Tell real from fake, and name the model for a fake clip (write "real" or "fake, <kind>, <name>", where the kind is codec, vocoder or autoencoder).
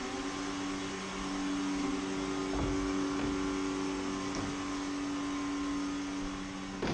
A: real